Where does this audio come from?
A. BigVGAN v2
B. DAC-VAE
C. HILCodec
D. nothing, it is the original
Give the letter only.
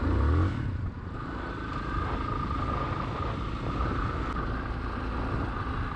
D